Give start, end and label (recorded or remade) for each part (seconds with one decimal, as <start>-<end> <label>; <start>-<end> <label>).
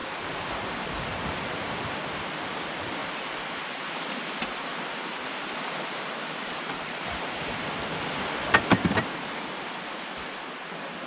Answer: 0.0-1.0 remade; 1.0-3.0 recorded; 3.0-7.8 remade; 7.8-11.1 recorded